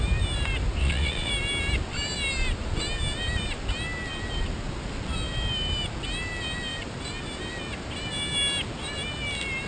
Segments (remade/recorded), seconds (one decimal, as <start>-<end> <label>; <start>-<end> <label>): 0.0-0.8 recorded; 0.8-1.3 remade; 1.3-9.7 recorded